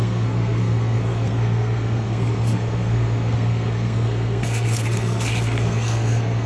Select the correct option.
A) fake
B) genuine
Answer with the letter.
A